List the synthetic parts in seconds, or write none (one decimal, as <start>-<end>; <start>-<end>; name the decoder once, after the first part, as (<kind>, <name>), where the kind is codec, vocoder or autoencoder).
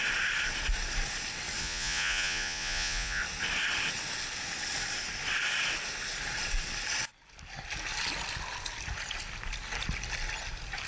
1.6-3.2 (vocoder, Vocos)